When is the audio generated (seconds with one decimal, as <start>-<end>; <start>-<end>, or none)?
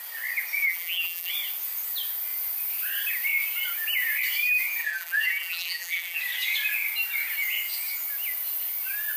0.6-1.3; 4.8-6.2